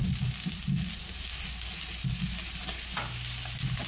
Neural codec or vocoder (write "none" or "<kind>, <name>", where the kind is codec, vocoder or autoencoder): none